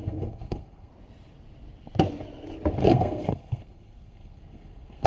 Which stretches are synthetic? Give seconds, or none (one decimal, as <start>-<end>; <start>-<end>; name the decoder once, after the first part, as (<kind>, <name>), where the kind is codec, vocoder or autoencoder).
0.0-0.9 (codec, SNAC); 2.8-5.1